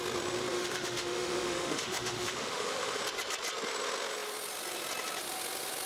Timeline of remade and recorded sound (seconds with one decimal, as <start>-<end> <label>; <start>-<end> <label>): 0.0-0.5 recorded; 0.5-3.0 remade; 3.0-5.9 recorded